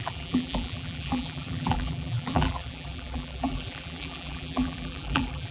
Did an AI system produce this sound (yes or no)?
yes